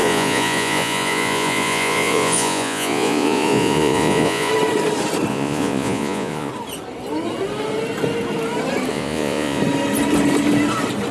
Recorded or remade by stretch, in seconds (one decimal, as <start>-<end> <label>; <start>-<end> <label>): 0.0-4.5 remade; 4.5-5.3 recorded; 5.3-6.5 remade; 6.5-8.9 recorded; 8.9-9.6 remade; 9.6-11.1 recorded

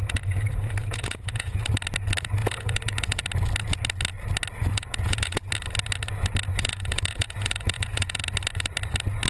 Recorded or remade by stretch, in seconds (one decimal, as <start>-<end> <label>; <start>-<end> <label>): 0.0-0.8 recorded; 0.8-1.6 remade; 1.6-2.4 recorded; 2.4-3.2 remade; 3.2-4.7 recorded; 4.7-5.5 remade; 5.5-6.5 recorded; 6.5-8.2 remade; 8.2-9.3 recorded

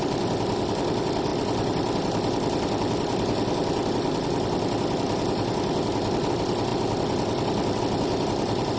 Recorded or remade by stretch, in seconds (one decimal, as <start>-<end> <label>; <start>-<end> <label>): 0.0-8.8 recorded

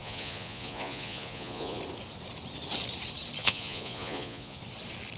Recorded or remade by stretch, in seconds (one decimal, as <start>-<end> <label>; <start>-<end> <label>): 0.0-1.8 remade; 1.8-3.4 recorded; 3.4-4.6 remade; 4.6-5.2 recorded

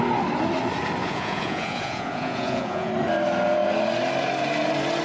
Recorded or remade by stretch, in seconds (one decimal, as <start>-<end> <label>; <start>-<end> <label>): 0.0-1.0 recorded; 1.0-2.9 remade; 2.9-5.0 recorded

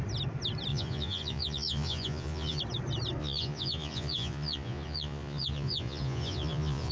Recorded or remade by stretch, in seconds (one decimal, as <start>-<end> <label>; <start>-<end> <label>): 0.0-0.7 recorded; 0.7-2.6 remade; 2.6-3.2 recorded; 3.2-6.9 remade

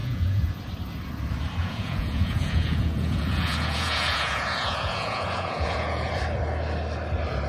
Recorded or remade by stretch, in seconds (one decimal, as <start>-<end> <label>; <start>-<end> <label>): 0.0-0.6 remade; 0.6-1.6 recorded; 1.6-6.1 remade; 6.1-7.5 recorded

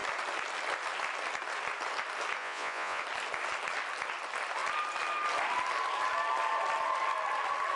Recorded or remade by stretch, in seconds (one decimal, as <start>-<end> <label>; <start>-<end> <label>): 0.0-2.4 recorded; 2.4-3.0 remade; 3.0-7.8 recorded